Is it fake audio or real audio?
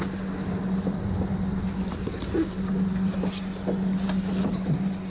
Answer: real